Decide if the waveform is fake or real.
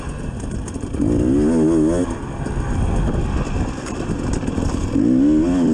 real